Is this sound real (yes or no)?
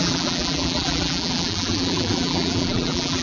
no